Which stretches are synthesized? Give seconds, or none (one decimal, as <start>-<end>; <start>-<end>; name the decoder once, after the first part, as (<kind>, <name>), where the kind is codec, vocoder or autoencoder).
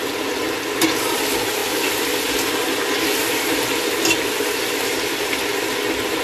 none